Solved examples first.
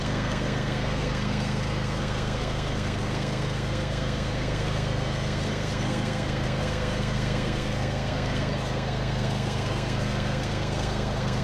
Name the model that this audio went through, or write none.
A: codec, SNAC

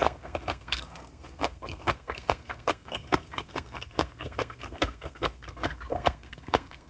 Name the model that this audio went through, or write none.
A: codec, SNAC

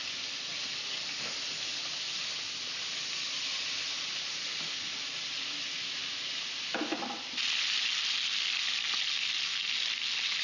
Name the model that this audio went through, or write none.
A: none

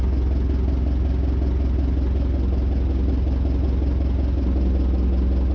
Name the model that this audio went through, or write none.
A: none